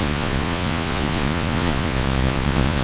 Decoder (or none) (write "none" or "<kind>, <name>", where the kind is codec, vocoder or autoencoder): vocoder, Vocos